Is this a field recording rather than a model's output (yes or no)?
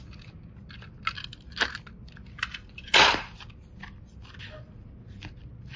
yes